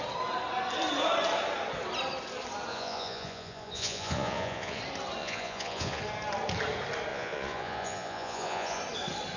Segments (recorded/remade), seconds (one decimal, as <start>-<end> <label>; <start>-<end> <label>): 0.0-2.7 recorded; 2.7-4.8 remade; 4.8-5.2 recorded; 5.2-6.0 remade; 6.0-7.1 recorded; 7.1-8.8 remade; 8.8-9.4 recorded